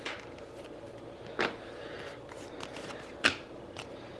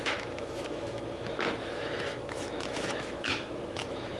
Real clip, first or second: first